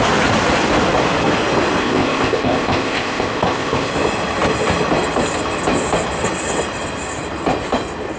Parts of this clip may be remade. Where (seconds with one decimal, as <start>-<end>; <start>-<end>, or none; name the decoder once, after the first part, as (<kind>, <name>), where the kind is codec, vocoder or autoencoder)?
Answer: 1.8-3.9 (codec, ZipCodec)